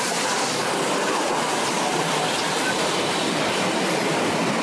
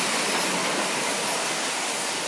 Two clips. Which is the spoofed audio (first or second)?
first